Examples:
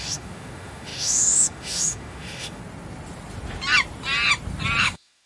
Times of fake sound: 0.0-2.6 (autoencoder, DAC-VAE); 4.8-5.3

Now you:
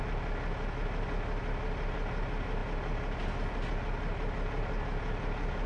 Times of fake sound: none

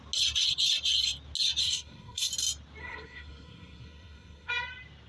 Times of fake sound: 1.6-2.3 (codec, SNAC); 2.8-4.5

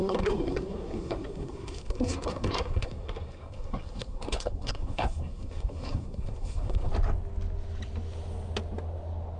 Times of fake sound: 0.0-6.9 (codec, SNAC)